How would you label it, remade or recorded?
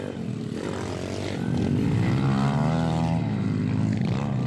recorded